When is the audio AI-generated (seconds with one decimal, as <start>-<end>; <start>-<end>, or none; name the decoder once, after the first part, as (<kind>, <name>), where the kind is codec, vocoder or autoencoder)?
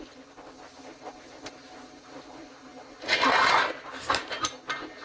none